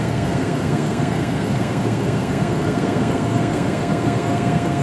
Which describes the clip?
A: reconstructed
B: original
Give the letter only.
A